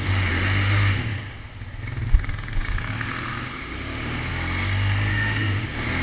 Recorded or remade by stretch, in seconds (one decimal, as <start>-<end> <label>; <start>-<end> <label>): 0.0-1.5 remade; 1.5-2.1 recorded; 2.1-4.3 remade; 4.3-5.1 recorded; 5.1-6.0 remade